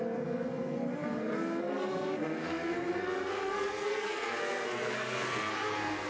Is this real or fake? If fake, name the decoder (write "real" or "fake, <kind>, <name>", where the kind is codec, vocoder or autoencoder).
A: fake, codec, SNAC